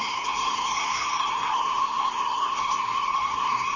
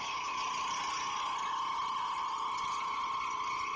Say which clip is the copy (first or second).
first